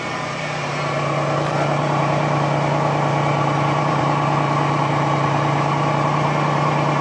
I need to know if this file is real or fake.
fake